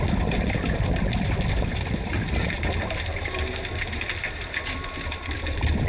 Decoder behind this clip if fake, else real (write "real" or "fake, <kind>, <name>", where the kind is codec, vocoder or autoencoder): fake, vocoder, BigVGAN v2